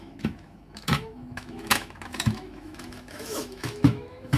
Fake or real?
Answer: fake